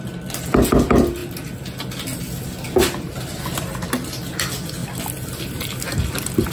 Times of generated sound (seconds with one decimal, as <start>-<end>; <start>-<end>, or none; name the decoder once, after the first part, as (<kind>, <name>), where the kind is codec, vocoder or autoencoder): none